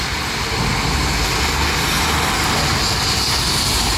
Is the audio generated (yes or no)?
no